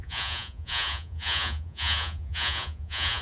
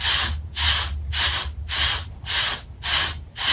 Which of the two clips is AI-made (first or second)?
first